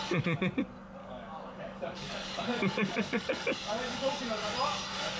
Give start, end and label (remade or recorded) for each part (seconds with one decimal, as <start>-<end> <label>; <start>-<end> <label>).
0.0-1.0 recorded; 1.0-4.1 remade; 4.1-5.2 recorded